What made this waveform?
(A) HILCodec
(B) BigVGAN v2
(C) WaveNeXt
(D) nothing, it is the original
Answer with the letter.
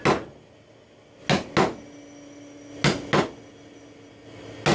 D